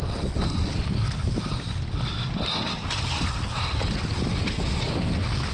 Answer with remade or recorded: recorded